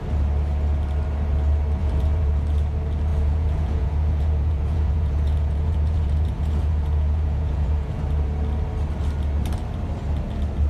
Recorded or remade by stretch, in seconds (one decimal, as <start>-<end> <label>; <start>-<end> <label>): 0.0-1.8 recorded; 1.8-2.3 remade; 2.3-3.1 recorded; 3.1-8.0 remade; 8.0-10.7 recorded